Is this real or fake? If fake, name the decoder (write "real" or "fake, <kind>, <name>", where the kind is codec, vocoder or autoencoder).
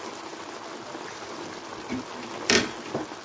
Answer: fake, vocoder, BigVGAN v2